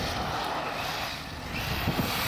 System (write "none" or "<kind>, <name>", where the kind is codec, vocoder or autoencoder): none